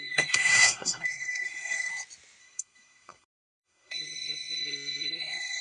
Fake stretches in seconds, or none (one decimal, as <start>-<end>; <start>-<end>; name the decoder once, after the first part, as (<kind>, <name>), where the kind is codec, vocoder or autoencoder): 0.0-1.9 (codec, SNAC); 2.4-5.6